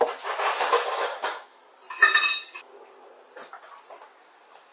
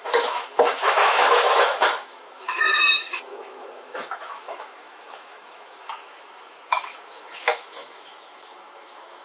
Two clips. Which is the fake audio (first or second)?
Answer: second